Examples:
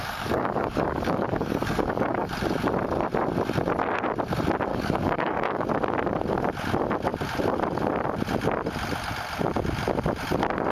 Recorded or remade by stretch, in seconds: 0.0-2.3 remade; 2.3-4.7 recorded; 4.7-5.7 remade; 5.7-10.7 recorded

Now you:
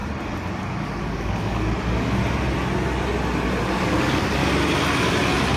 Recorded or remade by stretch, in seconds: 0.0-0.6 recorded; 0.6-2.2 remade; 2.2-3.6 recorded; 3.6-4.4 remade; 4.4-5.6 recorded